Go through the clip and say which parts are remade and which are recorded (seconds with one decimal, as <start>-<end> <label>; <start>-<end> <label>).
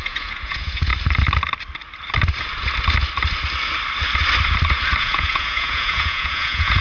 0.0-0.9 remade; 0.9-5.0 recorded; 5.0-6.8 remade